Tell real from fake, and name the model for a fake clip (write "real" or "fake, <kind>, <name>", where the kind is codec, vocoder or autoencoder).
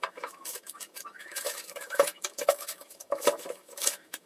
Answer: fake, autoencoder, DAC-VAE